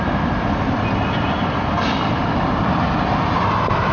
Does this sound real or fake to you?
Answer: real